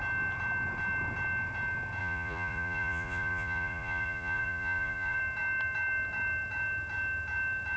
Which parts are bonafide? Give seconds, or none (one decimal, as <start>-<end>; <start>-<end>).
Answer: 0.0-2.0; 5.2-7.8